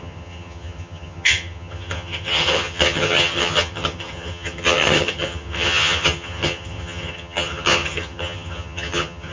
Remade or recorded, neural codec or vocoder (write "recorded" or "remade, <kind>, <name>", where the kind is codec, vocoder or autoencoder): remade, vocoder, HiFi-GAN